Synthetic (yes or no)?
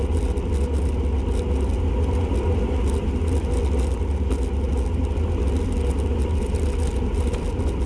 no